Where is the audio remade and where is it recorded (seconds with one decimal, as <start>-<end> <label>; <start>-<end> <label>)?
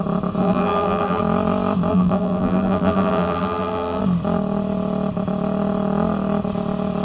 0.0-0.4 recorded; 0.4-1.2 remade; 1.2-1.9 recorded; 1.9-4.0 remade; 4.0-7.0 recorded